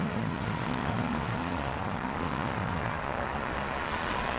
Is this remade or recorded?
remade